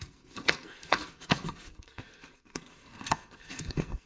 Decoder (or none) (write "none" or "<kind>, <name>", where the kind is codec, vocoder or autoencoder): codec, SNAC